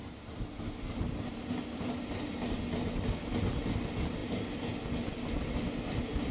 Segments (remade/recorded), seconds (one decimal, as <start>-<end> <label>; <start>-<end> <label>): 0.0-6.3 recorded